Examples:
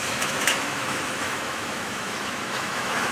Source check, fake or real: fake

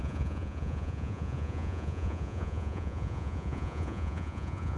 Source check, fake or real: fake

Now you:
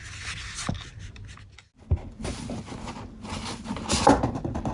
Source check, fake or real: real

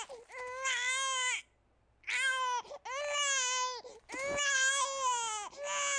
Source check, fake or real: real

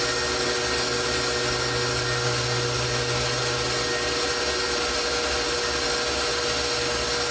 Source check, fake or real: real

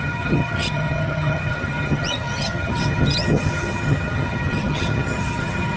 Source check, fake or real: fake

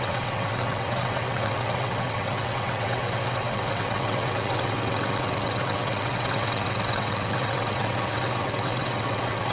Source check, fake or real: fake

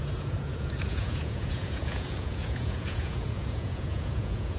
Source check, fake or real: fake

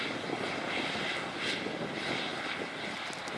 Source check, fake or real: real